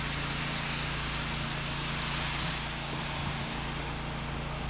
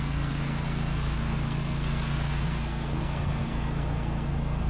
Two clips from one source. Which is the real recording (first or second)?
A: first